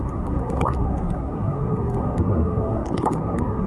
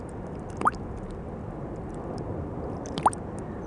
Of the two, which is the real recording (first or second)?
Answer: second